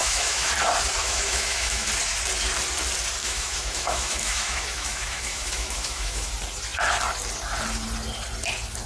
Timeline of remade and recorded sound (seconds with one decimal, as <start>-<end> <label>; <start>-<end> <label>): 0.0-0.5 remade; 0.5-1.0 recorded; 1.0-1.9 remade; 1.9-3.2 recorded; 3.2-6.3 remade; 6.3-8.9 recorded